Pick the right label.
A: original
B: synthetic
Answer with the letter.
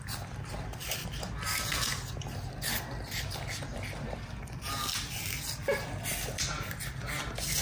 A